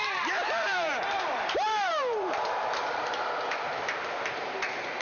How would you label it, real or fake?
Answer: fake